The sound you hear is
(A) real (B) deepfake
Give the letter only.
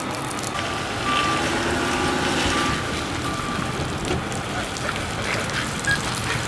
A